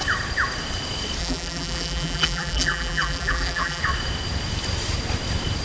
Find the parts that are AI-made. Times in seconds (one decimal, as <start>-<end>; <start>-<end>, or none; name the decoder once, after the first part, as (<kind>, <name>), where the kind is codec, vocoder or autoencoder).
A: 1.2-3.8 (vocoder, BigVGAN v2)